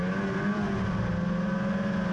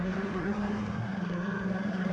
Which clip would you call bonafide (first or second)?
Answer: first